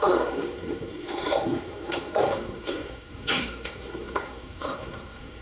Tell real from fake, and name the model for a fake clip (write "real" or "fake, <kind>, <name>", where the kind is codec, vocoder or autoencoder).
fake, codec, SNAC